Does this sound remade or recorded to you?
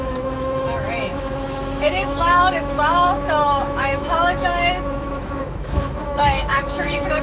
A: remade